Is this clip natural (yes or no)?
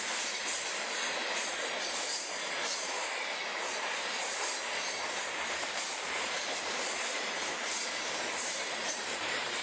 no